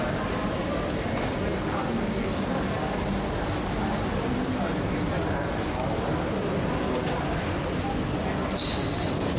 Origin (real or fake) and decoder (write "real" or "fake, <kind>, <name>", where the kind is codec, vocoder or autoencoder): real